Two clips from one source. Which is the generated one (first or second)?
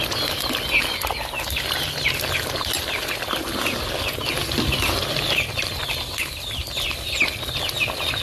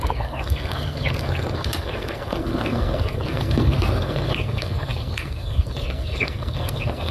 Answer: second